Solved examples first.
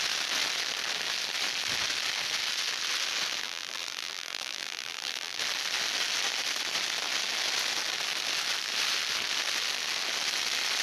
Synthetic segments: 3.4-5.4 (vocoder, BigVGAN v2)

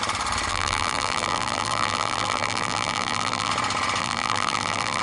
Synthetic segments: 0.5-3.5 (vocoder, BigVGAN v2); 4.0-5.0

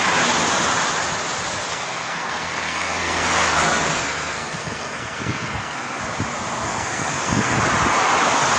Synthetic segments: 1.7-6.0 (codec, SNAC); 6.6-7.6

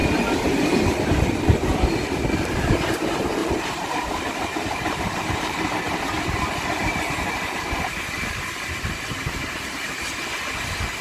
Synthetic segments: 0.0-1.1 (vocoder, BigVGAN v2); 3.4-6.0

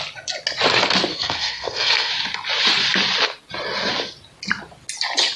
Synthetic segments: 1.1-2.1 (codec, SNAC)

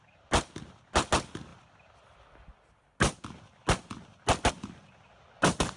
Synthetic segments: none

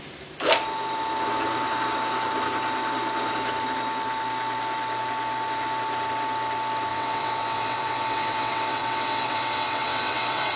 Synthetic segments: 6.9-10.6 (vocoder, WaveNeXt)